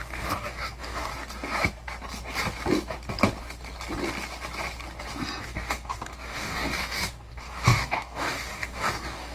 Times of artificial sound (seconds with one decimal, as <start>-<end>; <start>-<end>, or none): 0.0-1.1; 5.4-9.3